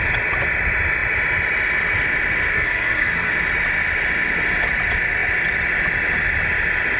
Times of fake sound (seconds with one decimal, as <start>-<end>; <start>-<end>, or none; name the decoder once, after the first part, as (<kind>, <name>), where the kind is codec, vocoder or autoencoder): 2.5-3.3 (codec, SNAC)